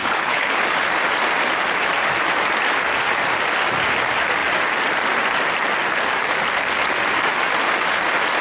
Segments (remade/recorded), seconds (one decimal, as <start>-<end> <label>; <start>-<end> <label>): 0.0-0.6 remade; 0.6-8.4 recorded

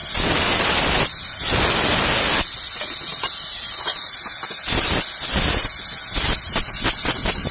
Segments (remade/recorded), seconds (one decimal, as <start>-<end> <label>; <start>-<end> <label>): 0.0-7.5 recorded

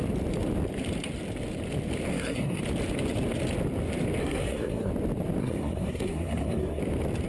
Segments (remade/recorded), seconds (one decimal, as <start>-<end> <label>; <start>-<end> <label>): 0.0-2.1 recorded; 2.1-2.6 remade; 2.6-4.2 recorded; 4.2-4.9 remade; 4.9-5.4 recorded; 5.4-6.8 remade; 6.8-7.3 recorded

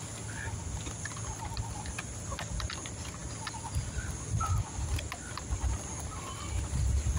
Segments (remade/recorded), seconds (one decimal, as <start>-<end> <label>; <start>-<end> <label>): 0.0-7.2 recorded

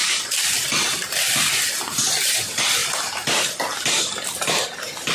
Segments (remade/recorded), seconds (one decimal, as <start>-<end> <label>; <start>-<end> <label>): 0.0-5.1 remade

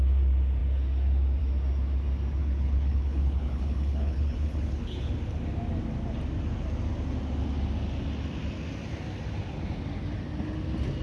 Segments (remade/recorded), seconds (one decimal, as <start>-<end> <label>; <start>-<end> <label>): 0.0-2.4 recorded; 2.4-5.1 remade; 5.1-11.0 recorded